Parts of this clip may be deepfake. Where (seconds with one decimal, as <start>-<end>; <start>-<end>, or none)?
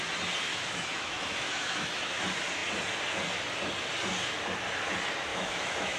0.5-2.2; 5.3-6.0